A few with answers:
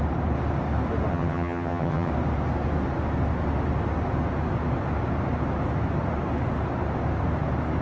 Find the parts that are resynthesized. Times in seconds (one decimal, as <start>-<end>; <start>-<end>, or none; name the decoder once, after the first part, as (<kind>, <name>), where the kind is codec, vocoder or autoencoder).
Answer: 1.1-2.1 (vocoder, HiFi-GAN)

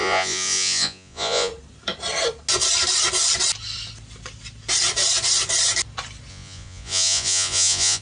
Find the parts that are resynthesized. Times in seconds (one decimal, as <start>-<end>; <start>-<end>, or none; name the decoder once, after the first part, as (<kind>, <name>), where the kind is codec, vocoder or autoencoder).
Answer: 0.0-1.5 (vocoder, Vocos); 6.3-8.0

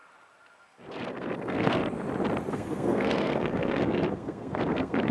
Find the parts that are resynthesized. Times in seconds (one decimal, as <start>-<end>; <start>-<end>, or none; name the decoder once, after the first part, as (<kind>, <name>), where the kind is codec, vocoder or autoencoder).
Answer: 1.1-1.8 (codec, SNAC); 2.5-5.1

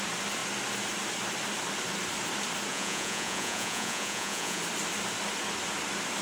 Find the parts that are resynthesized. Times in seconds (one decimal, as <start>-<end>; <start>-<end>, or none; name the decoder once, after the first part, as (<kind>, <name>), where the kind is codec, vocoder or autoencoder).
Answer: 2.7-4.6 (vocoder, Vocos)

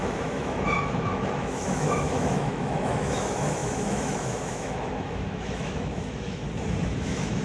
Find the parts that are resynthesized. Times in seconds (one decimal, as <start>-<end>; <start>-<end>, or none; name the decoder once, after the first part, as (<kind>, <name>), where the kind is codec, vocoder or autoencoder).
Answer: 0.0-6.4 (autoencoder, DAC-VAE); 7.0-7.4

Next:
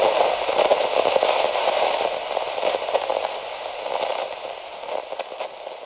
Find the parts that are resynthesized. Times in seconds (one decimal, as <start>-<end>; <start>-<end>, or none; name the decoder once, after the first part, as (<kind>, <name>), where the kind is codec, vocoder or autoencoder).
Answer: none

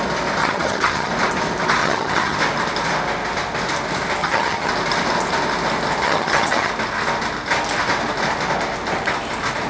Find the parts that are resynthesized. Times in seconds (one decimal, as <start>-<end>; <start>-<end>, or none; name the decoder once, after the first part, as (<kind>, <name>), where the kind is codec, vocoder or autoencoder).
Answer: 0.4-1.1 (vocoder, HiFi-GAN); 1.8-2.4; 4.2-4.7; 6.0-6.7